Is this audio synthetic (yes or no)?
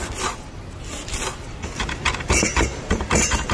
no